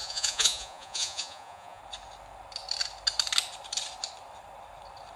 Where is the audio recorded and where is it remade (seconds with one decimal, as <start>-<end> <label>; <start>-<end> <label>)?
0.0-1.8 remade; 1.8-5.2 recorded